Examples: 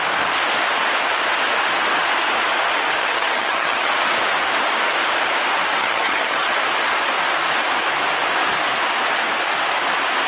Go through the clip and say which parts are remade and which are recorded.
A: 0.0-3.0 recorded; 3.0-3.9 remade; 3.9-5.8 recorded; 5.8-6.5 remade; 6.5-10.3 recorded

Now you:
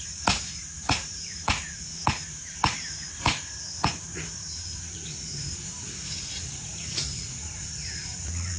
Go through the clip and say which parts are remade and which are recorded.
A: 0.0-8.6 remade

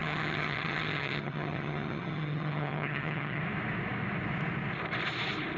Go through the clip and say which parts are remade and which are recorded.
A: 0.0-3.4 remade; 3.4-5.6 recorded

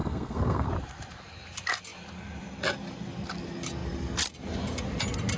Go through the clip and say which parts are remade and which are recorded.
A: 0.0-0.7 remade; 0.7-5.4 recorded

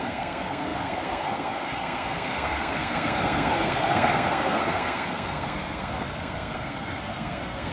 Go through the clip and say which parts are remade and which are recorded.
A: 0.0-7.7 remade

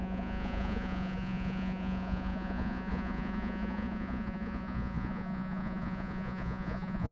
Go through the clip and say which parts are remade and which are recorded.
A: 0.0-7.1 remade

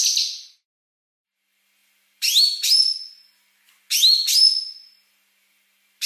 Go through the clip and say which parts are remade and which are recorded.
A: 0.0-6.1 recorded

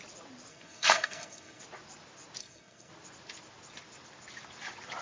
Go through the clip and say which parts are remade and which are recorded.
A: 0.0-0.5 recorded; 0.5-1.6 remade; 1.6-2.4 recorded; 2.4-2.9 remade; 2.9-5.0 recorded